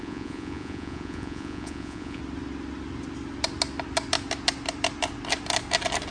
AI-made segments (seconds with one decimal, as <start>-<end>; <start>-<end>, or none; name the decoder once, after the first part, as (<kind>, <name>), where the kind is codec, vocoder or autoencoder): 0.0-2.2 (vocoder, Vocos)